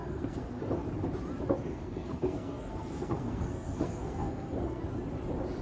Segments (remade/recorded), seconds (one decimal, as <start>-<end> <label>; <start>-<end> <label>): 0.0-0.6 remade; 0.6-1.7 recorded; 1.7-4.8 remade; 4.8-5.6 recorded